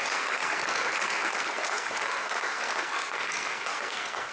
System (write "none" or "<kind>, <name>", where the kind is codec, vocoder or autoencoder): codec, SNAC